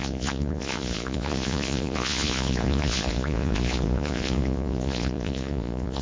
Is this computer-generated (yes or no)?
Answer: yes